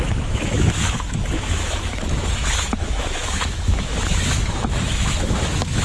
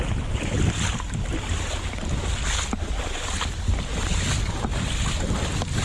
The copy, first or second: first